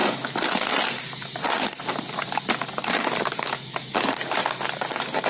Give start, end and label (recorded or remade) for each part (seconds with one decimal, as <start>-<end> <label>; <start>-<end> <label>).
0.0-5.3 recorded